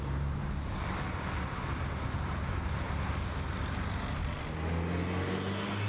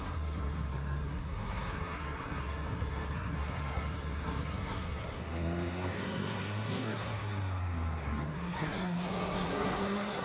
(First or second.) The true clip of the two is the first